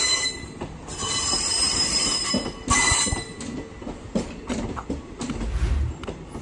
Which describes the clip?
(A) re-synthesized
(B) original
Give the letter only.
B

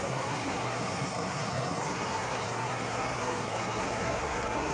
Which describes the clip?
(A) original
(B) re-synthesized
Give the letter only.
B